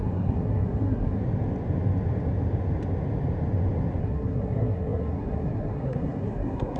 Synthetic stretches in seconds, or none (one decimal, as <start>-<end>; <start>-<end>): 0.0-1.2; 4.0-6.8